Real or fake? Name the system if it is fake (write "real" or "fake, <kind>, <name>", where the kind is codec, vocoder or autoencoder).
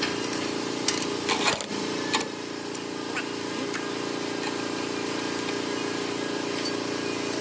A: real